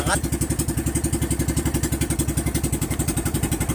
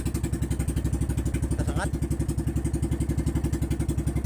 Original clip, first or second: second